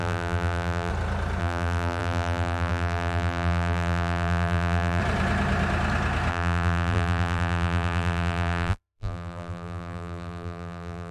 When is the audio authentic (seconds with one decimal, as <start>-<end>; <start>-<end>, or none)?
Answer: 0.9-1.4; 5.0-6.3